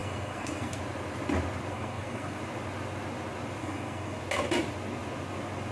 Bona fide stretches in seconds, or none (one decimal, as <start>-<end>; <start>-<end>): 0.8-1.7; 2.4-3.6; 4.2-5.7